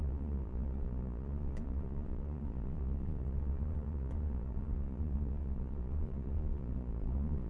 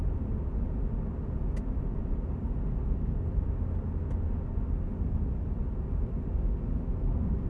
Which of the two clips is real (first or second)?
second